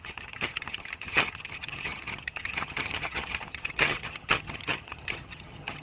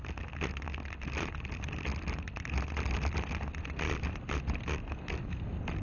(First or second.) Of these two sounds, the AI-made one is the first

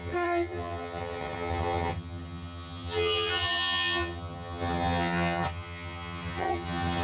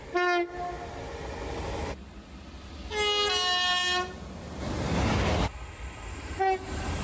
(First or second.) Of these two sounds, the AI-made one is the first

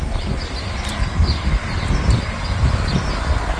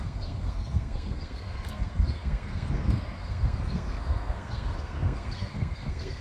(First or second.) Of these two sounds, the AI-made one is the second